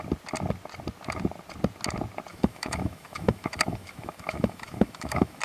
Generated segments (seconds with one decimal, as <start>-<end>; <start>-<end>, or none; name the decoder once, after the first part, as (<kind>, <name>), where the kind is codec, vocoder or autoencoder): 2.3-5.4 (autoencoder, DAC-VAE)